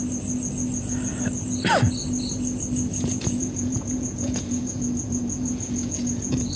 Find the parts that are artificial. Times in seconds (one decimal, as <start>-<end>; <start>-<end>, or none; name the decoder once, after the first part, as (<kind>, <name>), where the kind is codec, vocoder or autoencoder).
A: 2.9-6.6 (vocoder, Vocos)